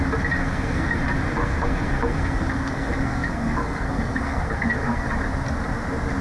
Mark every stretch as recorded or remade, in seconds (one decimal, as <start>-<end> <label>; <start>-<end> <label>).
0.0-0.4 recorded; 0.4-1.0 remade; 1.0-1.4 recorded; 1.4-5.1 remade; 5.1-6.2 recorded